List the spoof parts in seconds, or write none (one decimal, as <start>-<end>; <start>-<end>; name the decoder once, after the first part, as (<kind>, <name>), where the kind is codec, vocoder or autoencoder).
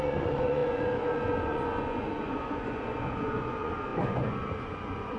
0.0-5.2 (vocoder, Vocos)